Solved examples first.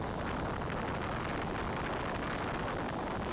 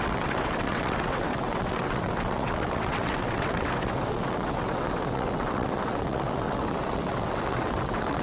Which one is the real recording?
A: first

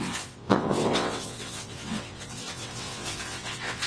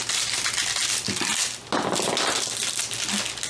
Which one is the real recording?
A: second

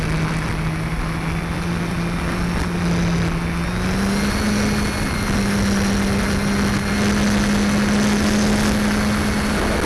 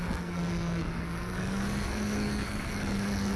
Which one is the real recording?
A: first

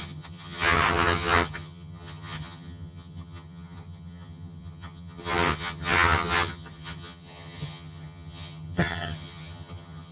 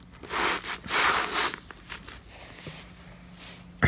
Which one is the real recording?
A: second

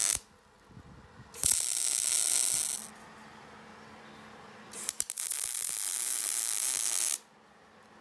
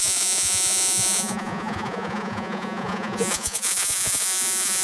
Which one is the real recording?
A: first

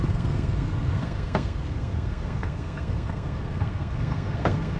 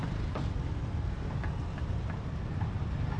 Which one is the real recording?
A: second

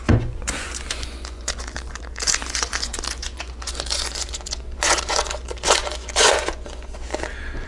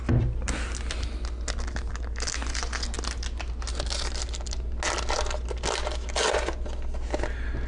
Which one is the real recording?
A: second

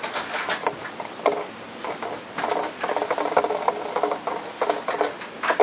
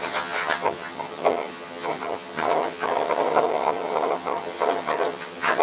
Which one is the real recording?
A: first